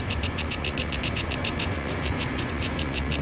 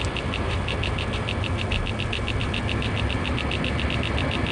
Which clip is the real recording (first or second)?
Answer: second